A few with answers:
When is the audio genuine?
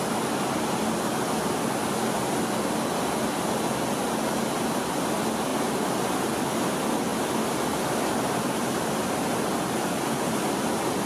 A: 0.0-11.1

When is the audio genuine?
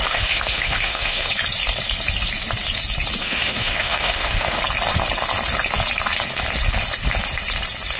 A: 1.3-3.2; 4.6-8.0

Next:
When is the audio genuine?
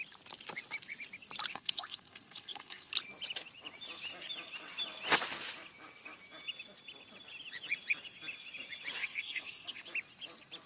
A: 0.0-1.5; 2.9-9.0; 9.8-10.7